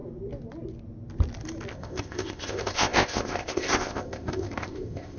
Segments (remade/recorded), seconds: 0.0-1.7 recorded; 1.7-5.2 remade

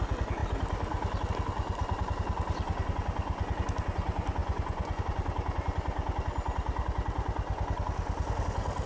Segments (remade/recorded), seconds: 0.0-4.4 recorded; 4.4-5.0 remade; 5.0-8.9 recorded

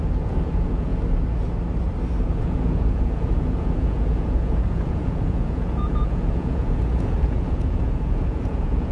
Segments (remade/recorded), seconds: 0.0-0.9 remade; 0.9-2.2 recorded; 2.2-8.9 remade

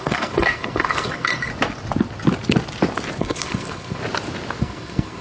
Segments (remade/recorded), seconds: 0.0-1.5 remade; 1.5-3.2 recorded; 3.2-4.0 remade; 4.0-4.6 recorded; 4.6-5.2 remade

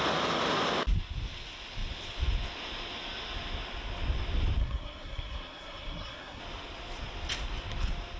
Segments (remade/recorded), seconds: 0.0-4.6 recorded; 4.6-6.4 remade; 6.4-8.2 recorded

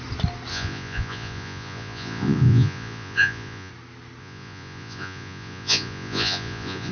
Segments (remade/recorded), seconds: 0.0-0.5 recorded; 0.5-3.7 remade; 3.7-4.2 recorded; 4.2-6.9 remade

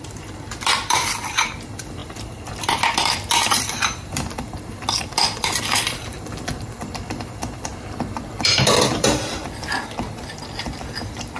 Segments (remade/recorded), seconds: 0.0-7.7 remade; 7.7-8.3 recorded; 8.3-11.4 remade

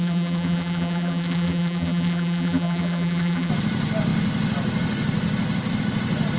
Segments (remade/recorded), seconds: 0.0-3.5 remade; 3.5-6.4 recorded